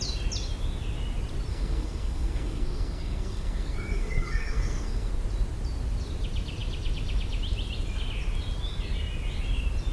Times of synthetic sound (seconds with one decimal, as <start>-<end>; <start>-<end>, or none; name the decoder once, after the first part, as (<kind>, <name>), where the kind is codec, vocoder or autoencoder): 1.5-5.1 (codec, SNAC)